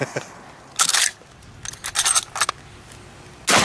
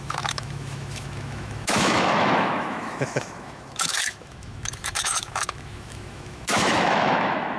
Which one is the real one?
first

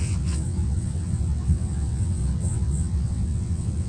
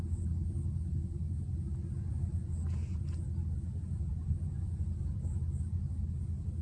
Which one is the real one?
second